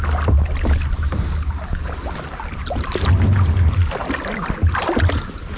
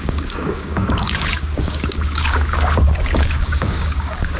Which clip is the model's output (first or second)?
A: second